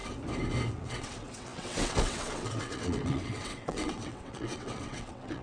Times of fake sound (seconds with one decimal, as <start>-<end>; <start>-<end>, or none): 0.7-5.4